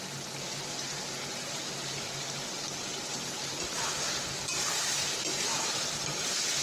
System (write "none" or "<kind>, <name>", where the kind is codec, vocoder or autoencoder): none